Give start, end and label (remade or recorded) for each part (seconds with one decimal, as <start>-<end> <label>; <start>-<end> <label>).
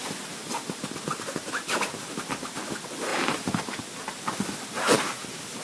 0.0-0.4 recorded; 0.4-1.0 remade; 1.0-3.1 recorded; 3.1-3.8 remade; 3.8-5.6 recorded